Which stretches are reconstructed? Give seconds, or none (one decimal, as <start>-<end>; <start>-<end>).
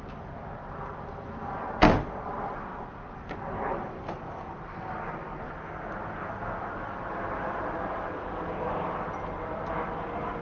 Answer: none